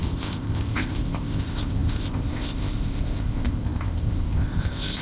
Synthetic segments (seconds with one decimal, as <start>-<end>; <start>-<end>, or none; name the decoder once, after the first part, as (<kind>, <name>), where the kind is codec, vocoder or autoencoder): 0.0-5.0 (codec, ZipCodec)